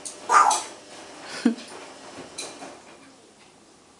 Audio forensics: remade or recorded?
recorded